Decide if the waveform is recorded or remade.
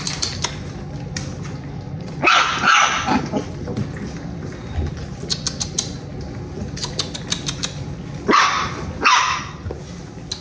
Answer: recorded